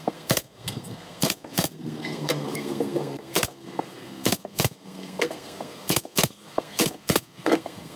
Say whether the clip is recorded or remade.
remade